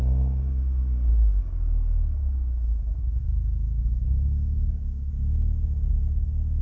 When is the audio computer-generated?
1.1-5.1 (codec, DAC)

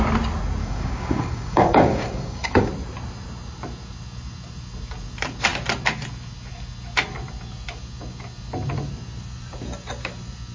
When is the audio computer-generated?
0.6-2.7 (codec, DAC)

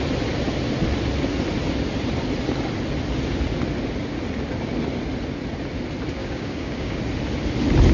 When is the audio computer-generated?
6.2-7.0 (codec, DAC)